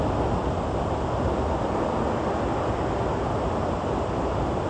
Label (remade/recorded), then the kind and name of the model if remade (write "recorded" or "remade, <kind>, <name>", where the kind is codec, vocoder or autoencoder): recorded